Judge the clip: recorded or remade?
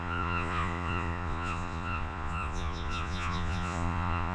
remade